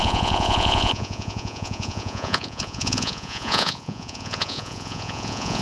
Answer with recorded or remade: remade